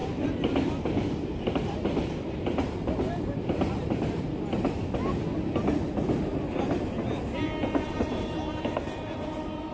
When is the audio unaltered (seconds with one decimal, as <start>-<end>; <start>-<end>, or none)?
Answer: 0.0-1.5; 4.3-7.9